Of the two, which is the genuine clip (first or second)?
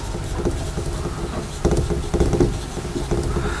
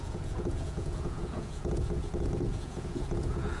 first